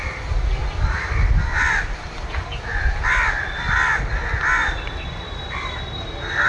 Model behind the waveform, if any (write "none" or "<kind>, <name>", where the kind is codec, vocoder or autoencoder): none